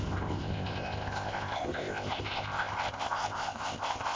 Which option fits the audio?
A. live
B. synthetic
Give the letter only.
B